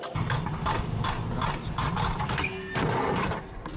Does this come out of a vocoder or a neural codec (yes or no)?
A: no